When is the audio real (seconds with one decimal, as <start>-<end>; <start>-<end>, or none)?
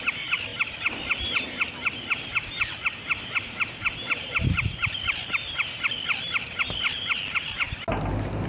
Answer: 0.0-8.5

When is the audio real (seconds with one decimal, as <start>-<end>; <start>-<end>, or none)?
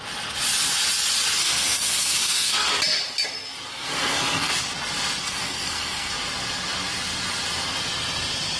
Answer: 0.0-1.4; 2.7-3.7; 4.5-5.2; 6.1-8.6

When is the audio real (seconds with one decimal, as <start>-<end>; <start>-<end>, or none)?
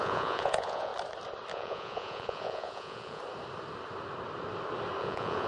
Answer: 0.9-1.5; 3.2-5.0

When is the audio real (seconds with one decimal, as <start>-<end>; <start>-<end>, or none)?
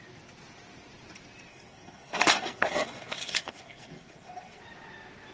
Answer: 0.0-1.5; 4.6-5.3